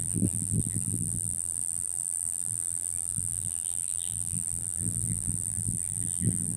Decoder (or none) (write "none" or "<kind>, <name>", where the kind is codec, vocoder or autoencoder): vocoder, BigVGAN v2